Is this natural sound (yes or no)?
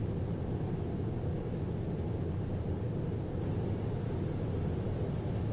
yes